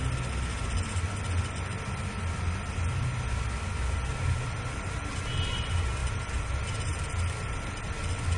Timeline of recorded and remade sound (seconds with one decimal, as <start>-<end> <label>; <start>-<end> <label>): 0.0-6.0 recorded; 6.0-7.0 remade; 7.0-8.4 recorded